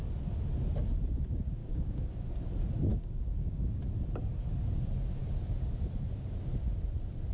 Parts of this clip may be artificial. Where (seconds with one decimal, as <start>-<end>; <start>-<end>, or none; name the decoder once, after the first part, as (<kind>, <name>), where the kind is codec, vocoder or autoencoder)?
1.6-2.1 (codec, DAC); 2.9-3.7

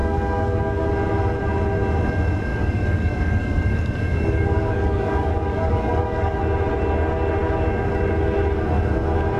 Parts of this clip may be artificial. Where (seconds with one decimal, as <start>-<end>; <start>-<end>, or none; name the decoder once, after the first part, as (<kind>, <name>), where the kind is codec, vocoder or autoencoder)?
0.0-0.9 (codec, DAC); 2.5-6.4

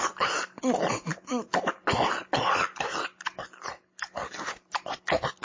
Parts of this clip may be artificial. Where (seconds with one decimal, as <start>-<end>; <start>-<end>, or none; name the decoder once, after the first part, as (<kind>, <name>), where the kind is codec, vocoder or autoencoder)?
none

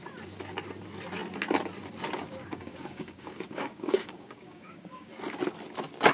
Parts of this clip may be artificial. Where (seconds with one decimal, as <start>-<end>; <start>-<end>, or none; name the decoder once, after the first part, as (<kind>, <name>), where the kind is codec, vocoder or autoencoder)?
2.4-5.1 (codec, DAC)